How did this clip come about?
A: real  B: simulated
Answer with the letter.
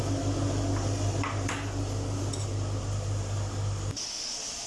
A